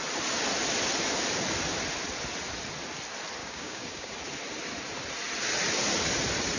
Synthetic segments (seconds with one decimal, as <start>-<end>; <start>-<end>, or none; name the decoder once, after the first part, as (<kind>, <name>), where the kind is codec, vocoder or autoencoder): 3.4-4.1 (codec, DAC)